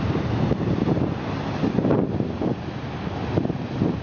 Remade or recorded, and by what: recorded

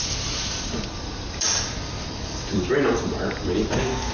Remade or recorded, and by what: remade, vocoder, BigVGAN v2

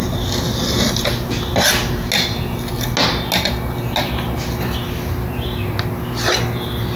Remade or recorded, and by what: recorded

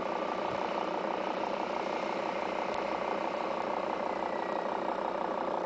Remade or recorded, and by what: recorded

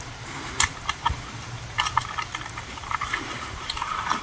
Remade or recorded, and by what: remade, vocoder, BigVGAN v2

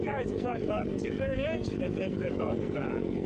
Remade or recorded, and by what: remade, codec, SNAC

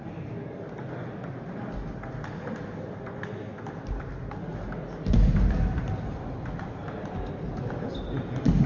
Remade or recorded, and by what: recorded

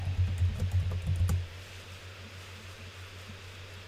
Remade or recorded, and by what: recorded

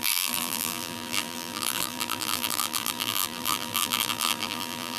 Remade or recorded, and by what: remade, vocoder, BigVGAN v2